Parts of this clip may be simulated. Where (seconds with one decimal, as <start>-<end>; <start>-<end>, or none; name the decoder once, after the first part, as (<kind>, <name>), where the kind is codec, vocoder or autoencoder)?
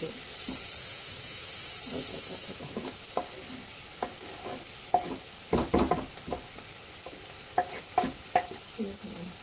0.8-1.7 (autoencoder, DAC-VAE); 2.1-3.0